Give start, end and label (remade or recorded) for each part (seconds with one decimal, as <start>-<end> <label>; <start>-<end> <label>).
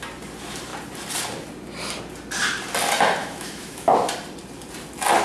0.0-3.2 recorded; 3.2-3.9 remade; 3.9-5.2 recorded